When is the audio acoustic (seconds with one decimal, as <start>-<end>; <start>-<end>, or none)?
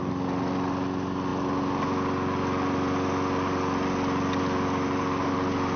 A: 0.0-5.8